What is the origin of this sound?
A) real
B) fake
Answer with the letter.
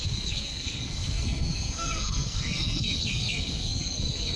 B